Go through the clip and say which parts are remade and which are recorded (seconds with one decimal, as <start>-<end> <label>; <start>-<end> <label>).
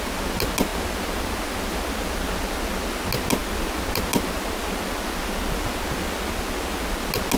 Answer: 0.0-7.4 recorded